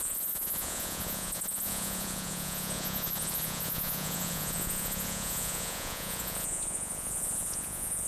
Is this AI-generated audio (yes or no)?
yes